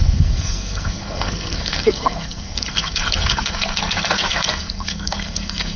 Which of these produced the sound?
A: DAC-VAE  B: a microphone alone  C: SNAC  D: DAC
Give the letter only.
C